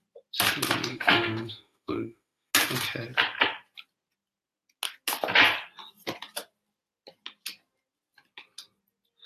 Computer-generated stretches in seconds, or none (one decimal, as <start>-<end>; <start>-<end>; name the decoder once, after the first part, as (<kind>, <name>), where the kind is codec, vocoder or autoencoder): 0.9-2.5 (autoencoder, DAC-VAE)